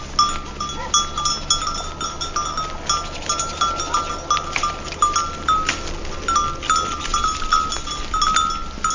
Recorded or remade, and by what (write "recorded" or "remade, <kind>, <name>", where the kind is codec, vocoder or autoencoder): recorded